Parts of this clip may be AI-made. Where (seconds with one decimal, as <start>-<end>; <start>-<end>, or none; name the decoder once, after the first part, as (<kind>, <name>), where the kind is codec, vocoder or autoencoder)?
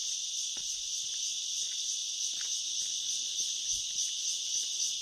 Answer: none